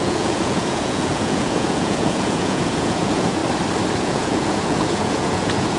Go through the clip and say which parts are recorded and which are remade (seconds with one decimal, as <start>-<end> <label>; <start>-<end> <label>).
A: 0.0-3.4 remade; 3.4-4.0 recorded; 4.0-5.8 remade